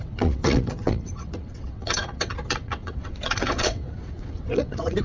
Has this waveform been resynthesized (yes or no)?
yes